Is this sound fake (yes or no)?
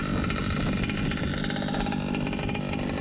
no